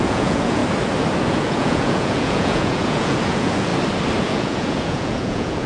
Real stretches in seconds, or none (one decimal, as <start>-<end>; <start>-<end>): 0.6-1.2; 3.7-4.2